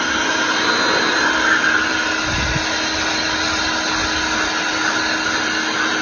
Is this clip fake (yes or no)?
no